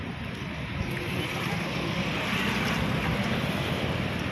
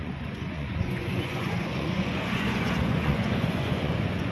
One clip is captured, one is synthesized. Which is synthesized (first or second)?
second